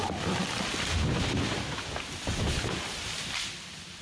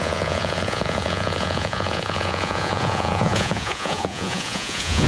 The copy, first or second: second